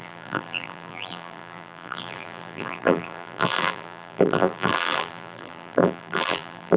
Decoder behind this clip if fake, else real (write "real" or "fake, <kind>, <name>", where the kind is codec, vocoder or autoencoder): fake, vocoder, BigVGAN v2